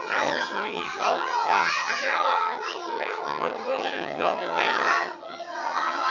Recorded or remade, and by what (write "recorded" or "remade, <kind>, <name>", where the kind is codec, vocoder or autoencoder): remade, vocoder, HiFi-GAN